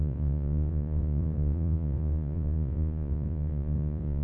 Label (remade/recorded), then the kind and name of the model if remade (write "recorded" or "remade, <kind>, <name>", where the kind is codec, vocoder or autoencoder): remade, vocoder, Vocos